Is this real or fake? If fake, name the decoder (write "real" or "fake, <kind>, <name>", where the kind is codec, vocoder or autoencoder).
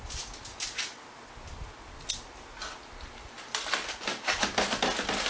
real